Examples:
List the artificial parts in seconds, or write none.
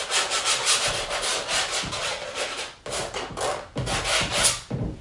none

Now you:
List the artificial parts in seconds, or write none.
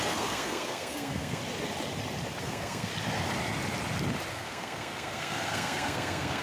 0.0-1.4 (codec, SNAC); 2.4-2.9; 4.3-6.4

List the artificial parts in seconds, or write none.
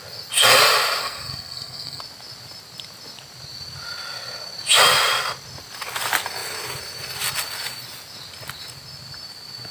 1.0-2.0 (codec, SNAC)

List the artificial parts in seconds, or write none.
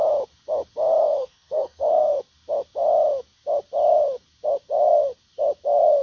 1.0-2.2 (codec, SNAC)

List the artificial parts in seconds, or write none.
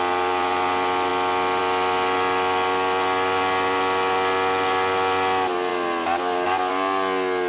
none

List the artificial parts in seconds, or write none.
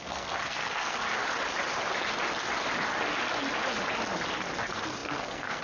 0.0-1.2 (codec, SNAC); 4.6-5.6